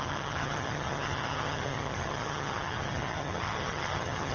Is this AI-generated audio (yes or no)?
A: yes